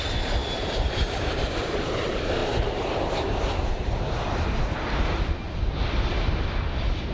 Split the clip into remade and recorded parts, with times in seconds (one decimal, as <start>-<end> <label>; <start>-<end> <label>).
0.0-0.4 recorded; 0.4-1.2 remade; 1.2-2.4 recorded; 2.4-5.2 remade; 5.2-7.1 recorded